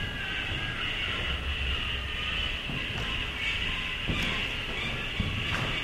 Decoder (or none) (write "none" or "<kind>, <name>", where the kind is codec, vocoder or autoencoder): none